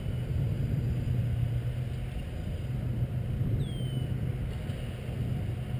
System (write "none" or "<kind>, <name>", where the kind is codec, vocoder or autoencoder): none